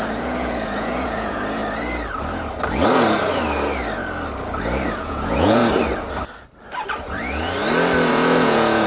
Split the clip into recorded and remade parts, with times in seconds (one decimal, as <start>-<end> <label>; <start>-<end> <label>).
0.0-1.6 remade; 1.6-4.9 recorded; 4.9-5.6 remade; 5.6-8.1 recorded; 8.1-8.9 remade